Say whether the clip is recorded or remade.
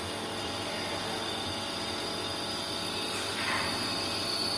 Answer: recorded